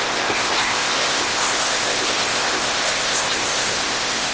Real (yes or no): no